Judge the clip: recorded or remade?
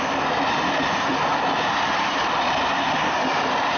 recorded